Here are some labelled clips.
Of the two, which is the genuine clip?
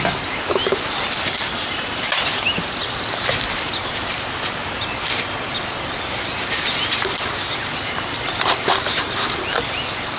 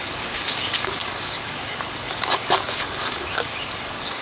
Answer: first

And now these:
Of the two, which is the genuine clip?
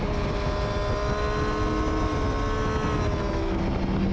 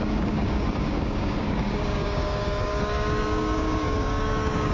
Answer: first